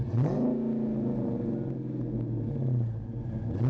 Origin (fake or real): real